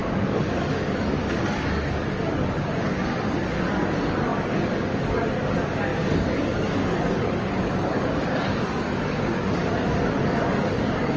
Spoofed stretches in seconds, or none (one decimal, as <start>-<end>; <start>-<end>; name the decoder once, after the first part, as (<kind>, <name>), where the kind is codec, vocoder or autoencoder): 0.0-3.0 (codec, DAC); 3.5-11.2